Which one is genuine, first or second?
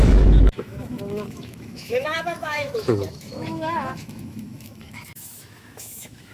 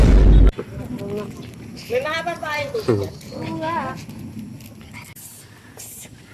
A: second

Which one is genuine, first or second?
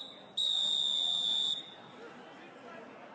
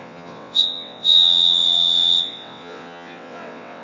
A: first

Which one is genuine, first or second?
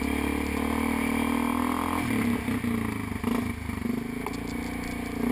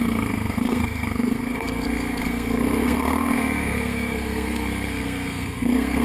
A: first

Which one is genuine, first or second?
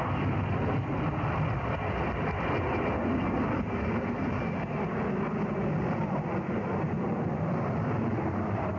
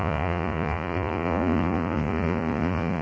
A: first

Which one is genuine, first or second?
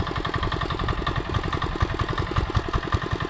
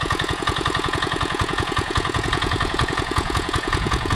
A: first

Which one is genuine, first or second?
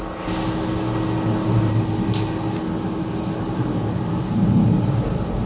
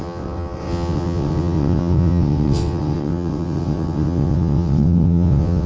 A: first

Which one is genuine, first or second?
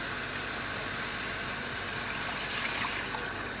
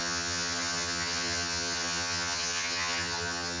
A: first